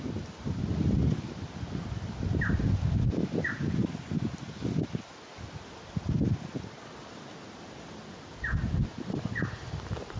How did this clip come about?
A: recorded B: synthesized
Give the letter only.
A